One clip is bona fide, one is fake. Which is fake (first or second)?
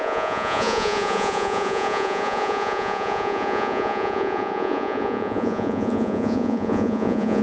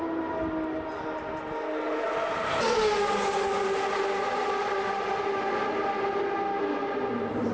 first